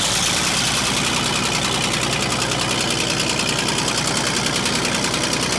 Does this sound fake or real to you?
real